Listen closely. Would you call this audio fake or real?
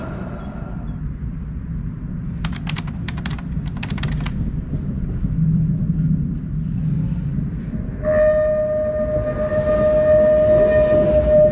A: real